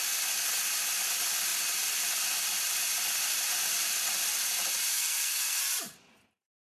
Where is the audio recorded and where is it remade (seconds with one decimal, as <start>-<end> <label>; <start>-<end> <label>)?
0.0-4.9 recorded; 4.9-5.6 remade; 5.6-6.7 recorded